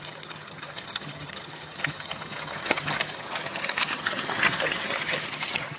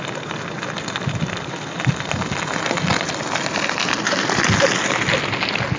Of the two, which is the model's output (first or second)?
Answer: first